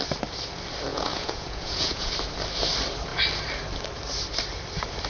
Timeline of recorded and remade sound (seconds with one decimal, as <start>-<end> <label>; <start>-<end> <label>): 0.0-0.9 recorded; 0.9-2.1 remade; 2.1-5.1 recorded